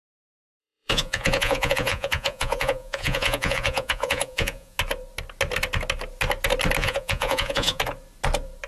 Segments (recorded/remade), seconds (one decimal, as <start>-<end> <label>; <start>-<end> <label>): 0.0-0.6 recorded; 0.6-4.8 remade; 4.8-6.8 recorded; 6.8-7.8 remade; 7.8-8.7 recorded